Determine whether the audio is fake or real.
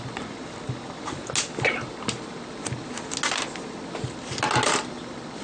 real